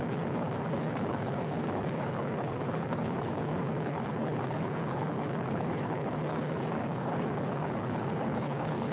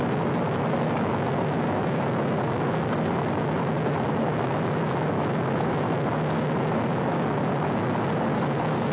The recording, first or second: second